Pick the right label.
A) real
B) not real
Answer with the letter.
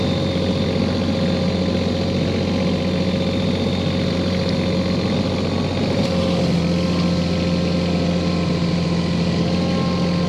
A